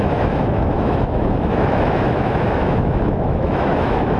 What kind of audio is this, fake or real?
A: fake